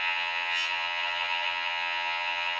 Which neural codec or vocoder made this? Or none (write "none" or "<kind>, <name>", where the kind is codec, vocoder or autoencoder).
vocoder, HiFi-GAN